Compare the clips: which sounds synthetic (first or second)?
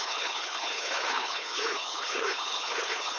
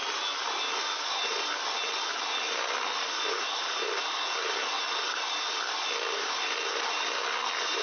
first